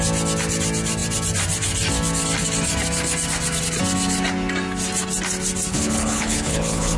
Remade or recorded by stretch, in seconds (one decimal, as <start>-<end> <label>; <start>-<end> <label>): 0.0-5.7 recorded; 5.7-7.0 remade